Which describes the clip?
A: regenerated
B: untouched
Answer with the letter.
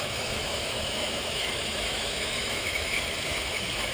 A